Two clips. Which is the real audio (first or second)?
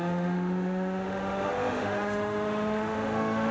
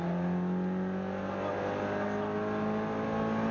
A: second